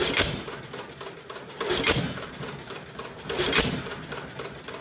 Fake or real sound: real